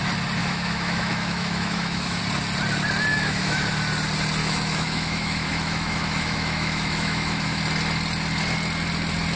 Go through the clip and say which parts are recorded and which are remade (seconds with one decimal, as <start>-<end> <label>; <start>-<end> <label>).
0.0-0.4 recorded; 0.4-2.2 remade; 2.2-3.1 recorded; 3.1-3.7 remade; 3.7-4.4 recorded; 4.4-7.6 remade; 7.6-9.4 recorded